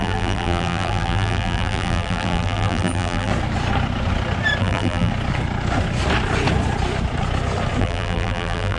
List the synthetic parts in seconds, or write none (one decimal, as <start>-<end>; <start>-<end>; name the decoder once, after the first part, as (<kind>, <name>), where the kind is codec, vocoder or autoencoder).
0.0-3.3 (vocoder, BigVGAN v2); 4.6-5.1; 7.8-8.8